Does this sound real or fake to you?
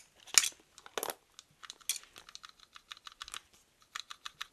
real